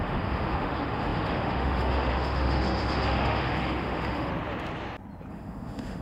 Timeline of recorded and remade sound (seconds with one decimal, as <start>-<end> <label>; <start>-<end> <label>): 0.0-4.3 remade; 4.3-5.3 recorded; 5.3-6.0 remade